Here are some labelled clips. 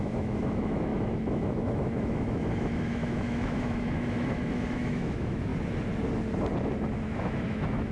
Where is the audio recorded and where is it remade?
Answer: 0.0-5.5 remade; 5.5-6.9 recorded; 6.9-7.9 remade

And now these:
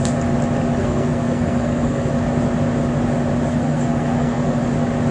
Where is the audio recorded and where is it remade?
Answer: 0.0-0.8 recorded; 0.8-2.1 remade; 2.1-3.5 recorded; 3.5-4.6 remade; 4.6-5.1 recorded